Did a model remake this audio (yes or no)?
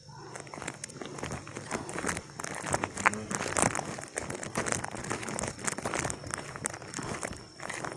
no